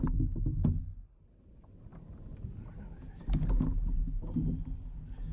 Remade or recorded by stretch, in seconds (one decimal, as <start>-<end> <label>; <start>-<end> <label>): 0.0-5.3 recorded